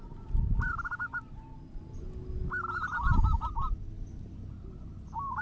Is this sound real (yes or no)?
yes